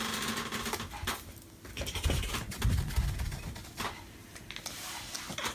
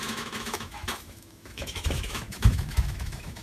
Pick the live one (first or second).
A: first